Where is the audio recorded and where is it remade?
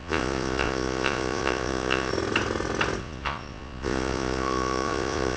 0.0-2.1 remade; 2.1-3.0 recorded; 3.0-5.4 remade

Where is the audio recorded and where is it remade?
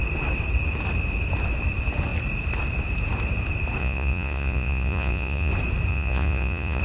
0.0-3.8 recorded; 3.8-5.5 remade; 5.5-5.9 recorded; 5.9-6.8 remade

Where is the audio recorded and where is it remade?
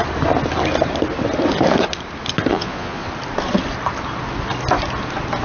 0.0-2.5 recorded; 2.5-3.1 remade; 3.1-5.4 recorded